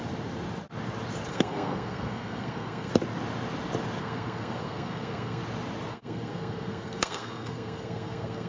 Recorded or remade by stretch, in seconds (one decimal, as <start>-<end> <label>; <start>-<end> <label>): 0.0-1.3 recorded; 1.3-2.9 remade; 2.9-4.0 recorded; 4.0-5.4 remade; 5.4-5.9 recorded; 5.9-8.5 remade